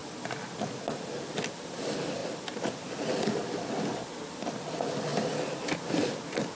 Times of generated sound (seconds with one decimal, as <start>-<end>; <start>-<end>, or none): 5.1-5.8